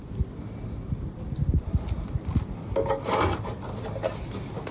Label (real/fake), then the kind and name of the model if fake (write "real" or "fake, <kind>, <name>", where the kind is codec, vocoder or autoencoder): real